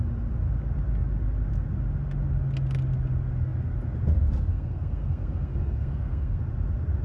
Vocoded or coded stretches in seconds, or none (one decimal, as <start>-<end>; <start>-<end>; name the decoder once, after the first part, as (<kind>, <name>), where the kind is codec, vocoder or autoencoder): 4.5-6.4 (codec, SNAC)